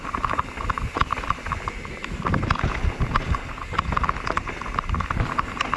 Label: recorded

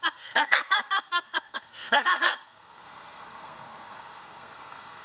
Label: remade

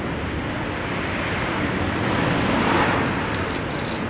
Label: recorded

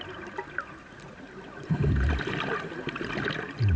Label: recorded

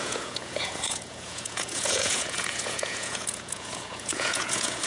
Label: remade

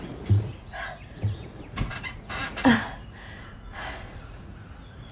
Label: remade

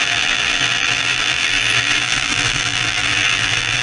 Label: remade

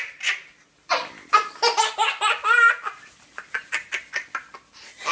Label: recorded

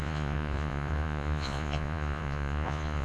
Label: remade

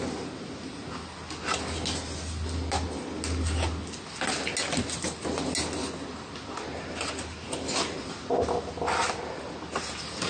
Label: recorded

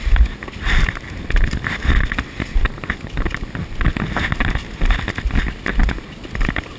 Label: recorded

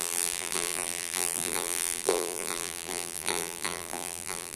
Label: remade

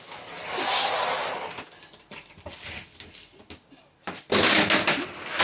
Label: recorded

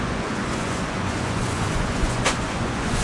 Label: remade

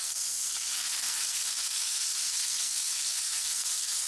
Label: remade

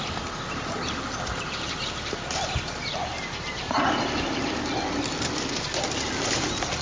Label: recorded